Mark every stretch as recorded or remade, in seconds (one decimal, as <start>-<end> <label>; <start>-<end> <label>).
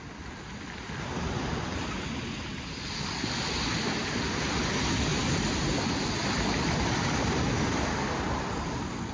0.0-9.1 recorded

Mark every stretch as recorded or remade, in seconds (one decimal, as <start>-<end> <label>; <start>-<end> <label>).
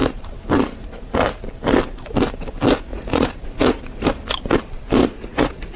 0.0-2.9 recorded; 2.9-3.8 remade; 3.8-5.0 recorded; 5.0-5.8 remade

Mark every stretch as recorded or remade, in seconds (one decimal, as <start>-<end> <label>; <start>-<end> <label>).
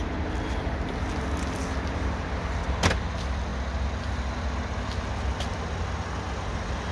0.0-6.9 recorded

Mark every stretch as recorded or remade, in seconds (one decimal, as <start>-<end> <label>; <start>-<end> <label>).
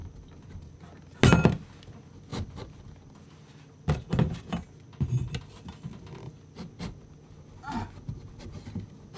0.0-9.2 recorded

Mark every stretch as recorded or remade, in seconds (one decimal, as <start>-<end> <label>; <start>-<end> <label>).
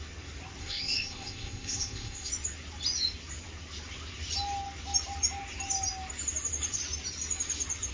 0.0-0.6 recorded; 0.6-2.3 remade; 2.3-7.9 recorded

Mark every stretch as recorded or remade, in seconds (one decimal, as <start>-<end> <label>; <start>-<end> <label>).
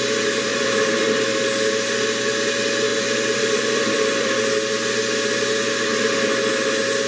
0.0-0.5 recorded; 0.5-1.3 remade; 1.3-2.9 recorded; 2.9-4.4 remade; 4.4-7.1 recorded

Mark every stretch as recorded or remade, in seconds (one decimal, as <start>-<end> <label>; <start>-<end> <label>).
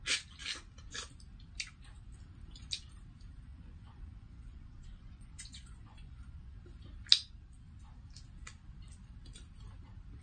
0.0-3.5 recorded; 3.5-6.6 remade; 6.6-10.2 recorded